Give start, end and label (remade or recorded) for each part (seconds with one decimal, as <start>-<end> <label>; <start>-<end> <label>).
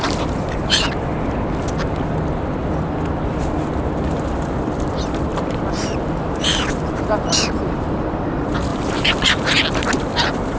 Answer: 0.0-5.3 recorded; 5.3-6.4 remade; 6.4-8.7 recorded; 8.7-9.5 remade; 9.5-10.6 recorded